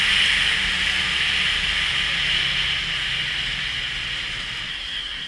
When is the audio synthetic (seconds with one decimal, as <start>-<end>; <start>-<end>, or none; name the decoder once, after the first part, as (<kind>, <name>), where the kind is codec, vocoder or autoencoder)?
4.7-5.3 (codec, SNAC)